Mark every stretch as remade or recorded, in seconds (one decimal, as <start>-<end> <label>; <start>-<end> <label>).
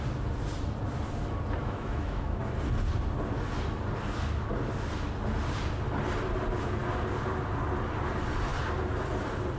0.0-1.6 recorded; 1.6-2.4 remade; 2.4-9.6 recorded